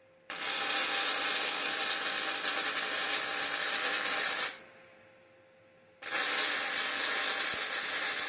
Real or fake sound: real